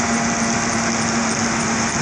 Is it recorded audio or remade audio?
recorded